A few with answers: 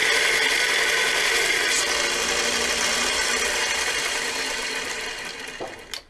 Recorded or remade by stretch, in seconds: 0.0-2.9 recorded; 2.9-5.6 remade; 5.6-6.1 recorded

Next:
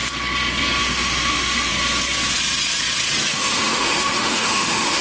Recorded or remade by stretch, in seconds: 0.0-0.8 recorded; 0.8-1.7 remade; 1.7-3.3 recorded; 3.3-5.0 remade

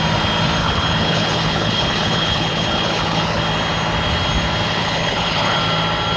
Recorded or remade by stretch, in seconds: 0.0-0.6 recorded; 0.6-3.4 remade; 3.4-4.8 recorded; 4.8-5.6 remade; 5.6-6.2 recorded

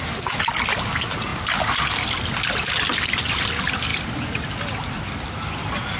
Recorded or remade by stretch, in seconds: 0.0-6.0 recorded

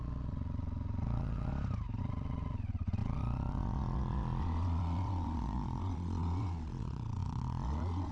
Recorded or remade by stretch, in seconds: 0.0-1.5 remade; 1.5-2.0 recorded; 2.0-8.1 remade